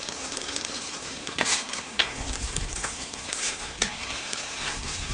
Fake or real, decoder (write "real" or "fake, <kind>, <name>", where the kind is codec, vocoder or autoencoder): fake, codec, SNAC